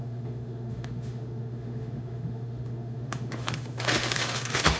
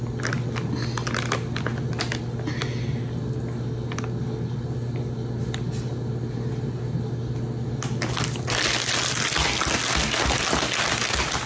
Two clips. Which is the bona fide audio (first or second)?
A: second